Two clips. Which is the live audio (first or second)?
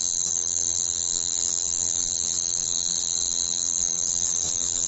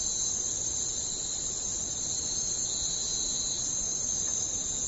second